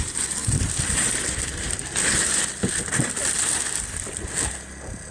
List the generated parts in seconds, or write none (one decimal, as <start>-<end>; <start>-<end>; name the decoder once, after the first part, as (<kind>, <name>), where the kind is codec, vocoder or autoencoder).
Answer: none